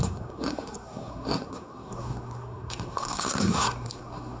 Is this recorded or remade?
remade